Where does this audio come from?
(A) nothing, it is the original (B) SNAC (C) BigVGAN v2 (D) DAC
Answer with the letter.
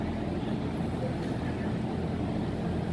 A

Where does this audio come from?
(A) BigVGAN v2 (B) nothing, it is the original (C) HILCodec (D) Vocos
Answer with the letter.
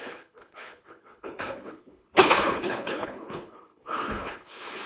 C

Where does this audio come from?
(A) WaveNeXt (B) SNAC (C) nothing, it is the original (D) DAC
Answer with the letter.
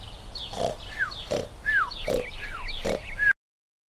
C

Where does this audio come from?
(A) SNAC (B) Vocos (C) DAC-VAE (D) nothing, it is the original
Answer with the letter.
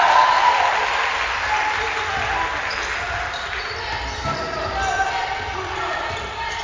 D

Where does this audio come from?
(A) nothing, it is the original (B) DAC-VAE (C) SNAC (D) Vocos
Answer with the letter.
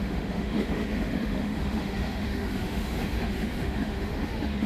B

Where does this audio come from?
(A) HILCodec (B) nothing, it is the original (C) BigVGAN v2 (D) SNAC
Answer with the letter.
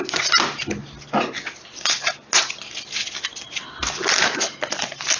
B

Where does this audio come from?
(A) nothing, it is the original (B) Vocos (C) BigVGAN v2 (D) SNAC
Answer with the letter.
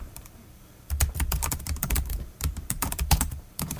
C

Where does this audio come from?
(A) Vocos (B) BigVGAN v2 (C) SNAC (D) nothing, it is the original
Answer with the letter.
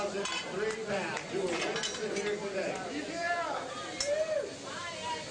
D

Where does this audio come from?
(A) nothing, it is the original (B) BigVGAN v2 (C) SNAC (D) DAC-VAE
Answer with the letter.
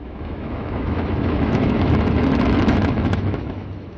D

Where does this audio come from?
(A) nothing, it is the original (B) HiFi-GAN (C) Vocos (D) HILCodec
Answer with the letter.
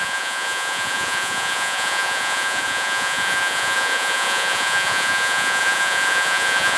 C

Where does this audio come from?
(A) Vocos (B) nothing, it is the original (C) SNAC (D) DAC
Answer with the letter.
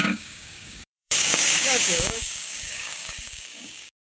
D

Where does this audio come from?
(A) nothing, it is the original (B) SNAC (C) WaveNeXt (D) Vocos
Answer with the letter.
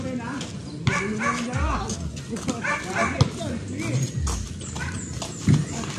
A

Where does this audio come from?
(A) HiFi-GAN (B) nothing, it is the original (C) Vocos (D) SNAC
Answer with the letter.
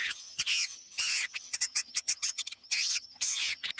A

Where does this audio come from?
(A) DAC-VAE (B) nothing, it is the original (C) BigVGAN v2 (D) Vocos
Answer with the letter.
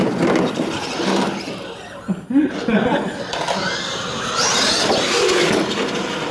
B